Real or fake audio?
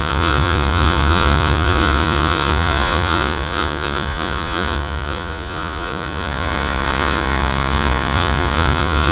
fake